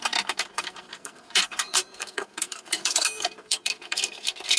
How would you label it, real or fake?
fake